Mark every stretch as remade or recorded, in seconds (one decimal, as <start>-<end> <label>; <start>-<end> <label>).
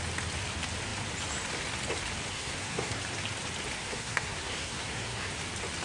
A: 0.0-2.3 recorded; 2.3-3.0 remade; 3.0-3.8 recorded; 3.8-5.3 remade; 5.3-5.8 recorded